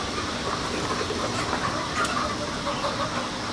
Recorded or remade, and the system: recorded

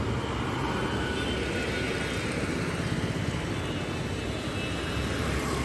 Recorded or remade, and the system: recorded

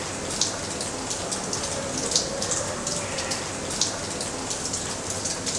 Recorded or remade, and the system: recorded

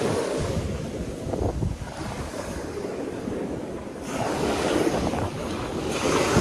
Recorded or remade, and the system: remade, codec, DAC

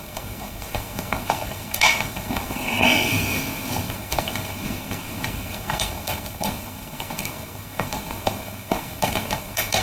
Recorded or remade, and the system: remade, codec, SNAC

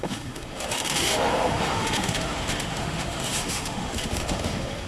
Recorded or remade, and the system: remade, autoencoder, DAC-VAE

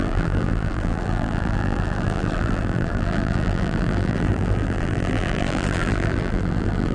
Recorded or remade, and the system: remade, vocoder, BigVGAN v2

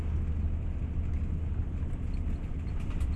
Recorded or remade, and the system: recorded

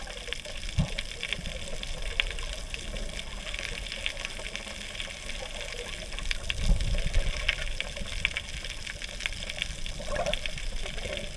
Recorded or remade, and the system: recorded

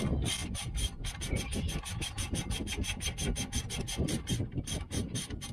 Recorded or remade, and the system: recorded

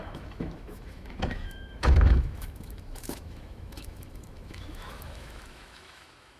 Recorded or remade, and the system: remade, autoencoder, DAC-VAE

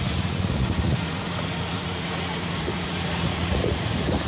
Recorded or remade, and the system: remade, vocoder, Vocos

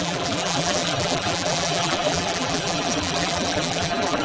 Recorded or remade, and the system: remade, vocoder, BigVGAN v2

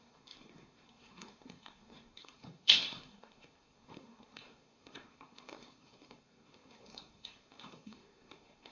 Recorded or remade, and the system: remade, codec, SNAC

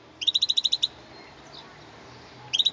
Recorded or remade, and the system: recorded